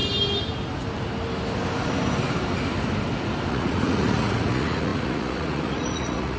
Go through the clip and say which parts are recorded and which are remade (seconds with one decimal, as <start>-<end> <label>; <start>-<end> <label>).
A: 0.0-3.5 recorded; 3.5-6.4 remade